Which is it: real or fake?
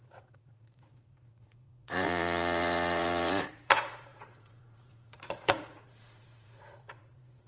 fake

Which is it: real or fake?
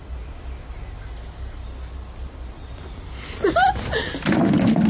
real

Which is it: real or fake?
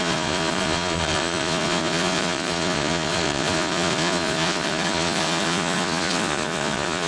fake